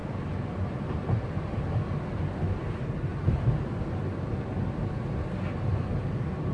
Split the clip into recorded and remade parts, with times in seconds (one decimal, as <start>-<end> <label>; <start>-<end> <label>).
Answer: 0.0-6.5 recorded